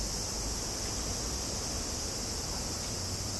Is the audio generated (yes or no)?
no